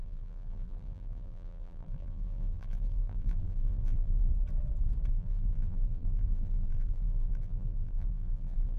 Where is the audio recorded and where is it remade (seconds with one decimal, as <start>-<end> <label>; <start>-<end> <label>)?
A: 0.0-4.3 remade; 4.3-5.1 recorded; 5.1-8.8 remade